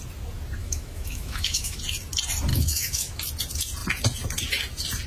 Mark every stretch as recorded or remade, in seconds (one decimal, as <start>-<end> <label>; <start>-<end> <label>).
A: 0.0-0.6 recorded; 0.6-1.8 remade; 1.8-2.5 recorded; 2.5-3.2 remade; 3.2-5.1 recorded